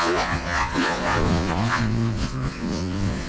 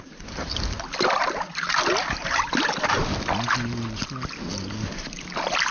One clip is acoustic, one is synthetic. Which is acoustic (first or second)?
second